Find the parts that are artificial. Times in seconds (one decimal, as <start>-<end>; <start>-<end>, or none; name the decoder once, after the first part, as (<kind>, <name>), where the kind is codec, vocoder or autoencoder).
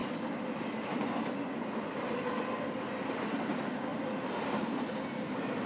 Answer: none